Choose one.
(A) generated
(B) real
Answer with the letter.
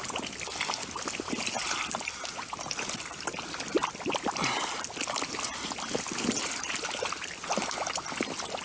B